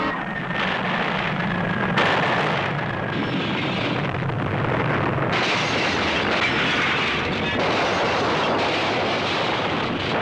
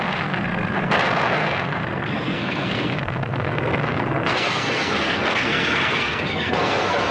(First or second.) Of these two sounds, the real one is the first